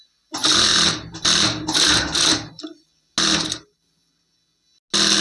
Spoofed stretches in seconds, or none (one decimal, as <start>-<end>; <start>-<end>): none